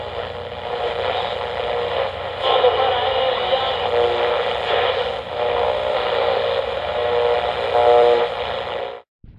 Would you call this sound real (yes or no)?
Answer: yes